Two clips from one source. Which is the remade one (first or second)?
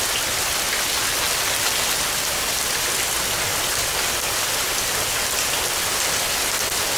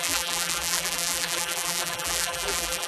second